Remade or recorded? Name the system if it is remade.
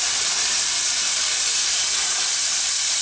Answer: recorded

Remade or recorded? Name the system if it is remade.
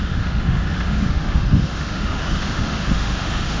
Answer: remade, autoencoder, DAC-VAE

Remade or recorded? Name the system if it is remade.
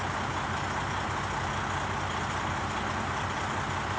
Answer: recorded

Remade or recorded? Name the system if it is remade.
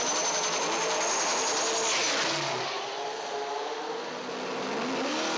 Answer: recorded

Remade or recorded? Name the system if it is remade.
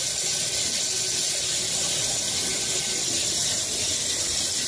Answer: recorded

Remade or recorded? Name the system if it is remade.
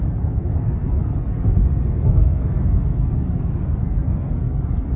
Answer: remade, codec, SNAC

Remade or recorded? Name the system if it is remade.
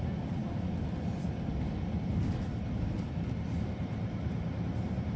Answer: recorded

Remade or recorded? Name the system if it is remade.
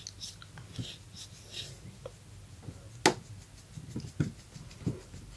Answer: recorded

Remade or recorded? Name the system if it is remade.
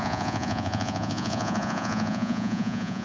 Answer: remade, vocoder, Vocos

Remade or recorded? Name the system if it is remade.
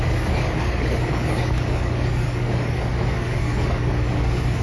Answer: remade, codec, DAC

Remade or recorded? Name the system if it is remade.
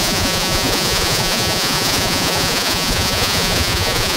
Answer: remade, vocoder, Vocos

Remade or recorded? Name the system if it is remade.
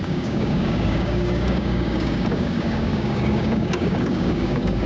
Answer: remade, codec, DAC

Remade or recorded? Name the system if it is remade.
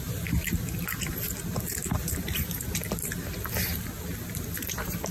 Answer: recorded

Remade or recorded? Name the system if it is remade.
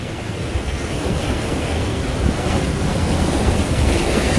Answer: remade, codec, SNAC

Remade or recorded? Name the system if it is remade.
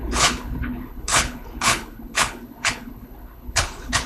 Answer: remade, codec, HILCodec